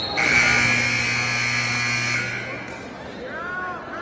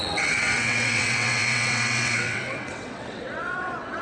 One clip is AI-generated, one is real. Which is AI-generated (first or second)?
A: second